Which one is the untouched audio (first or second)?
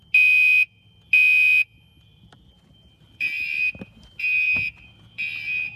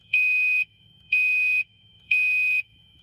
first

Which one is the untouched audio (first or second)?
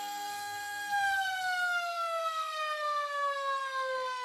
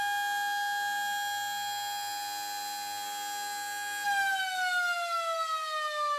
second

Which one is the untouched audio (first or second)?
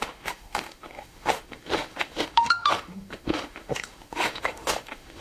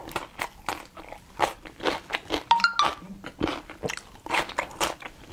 second